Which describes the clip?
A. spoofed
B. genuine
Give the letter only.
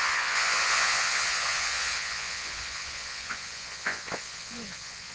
A